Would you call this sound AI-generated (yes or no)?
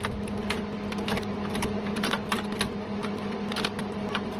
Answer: no